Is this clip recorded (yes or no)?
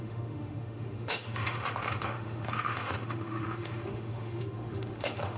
no